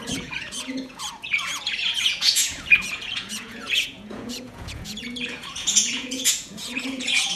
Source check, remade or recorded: remade